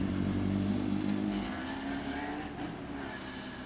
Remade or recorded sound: recorded